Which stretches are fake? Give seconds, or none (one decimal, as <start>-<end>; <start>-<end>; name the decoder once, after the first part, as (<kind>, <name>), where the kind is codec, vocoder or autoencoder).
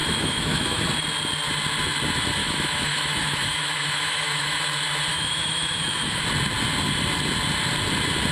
0.0-0.8 (autoencoder, DAC-VAE); 2.4-4.6; 5.1-6.2